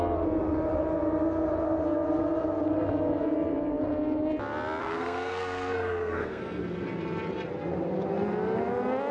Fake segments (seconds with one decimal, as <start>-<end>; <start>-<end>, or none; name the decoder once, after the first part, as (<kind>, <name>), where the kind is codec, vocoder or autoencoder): 4.8-6.4 (codec, SNAC)

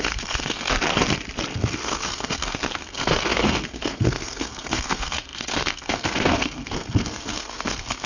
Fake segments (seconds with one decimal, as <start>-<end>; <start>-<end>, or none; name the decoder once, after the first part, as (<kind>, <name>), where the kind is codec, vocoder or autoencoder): 0.0-0.7 (codec, SNAC); 1.5-8.1